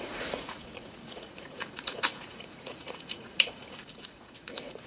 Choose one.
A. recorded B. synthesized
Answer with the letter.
B